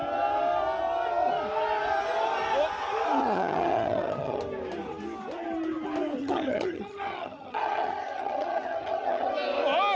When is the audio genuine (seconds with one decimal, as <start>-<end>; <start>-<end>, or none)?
0.0-3.2; 4.4-6.2; 9.3-9.9